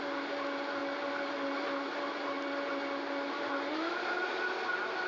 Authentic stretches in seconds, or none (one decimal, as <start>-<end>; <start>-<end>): 0.0-5.1